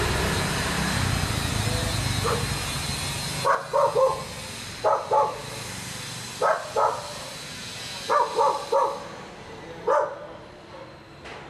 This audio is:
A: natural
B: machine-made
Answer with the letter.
A